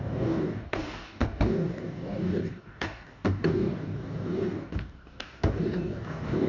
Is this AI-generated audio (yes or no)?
yes